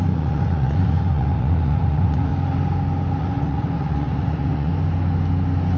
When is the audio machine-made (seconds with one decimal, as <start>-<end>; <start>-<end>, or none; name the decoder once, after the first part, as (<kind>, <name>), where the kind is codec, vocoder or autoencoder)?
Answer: 0.0-2.3 (vocoder, Vocos); 3.2-4.7